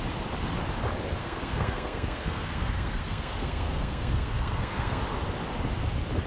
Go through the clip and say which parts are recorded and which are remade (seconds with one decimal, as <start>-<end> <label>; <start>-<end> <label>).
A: 0.0-1.2 recorded; 1.2-5.0 remade; 5.0-6.3 recorded